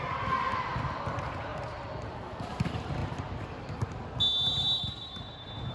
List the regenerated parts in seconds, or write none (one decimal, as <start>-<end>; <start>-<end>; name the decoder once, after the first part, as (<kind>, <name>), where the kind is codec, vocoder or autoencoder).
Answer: none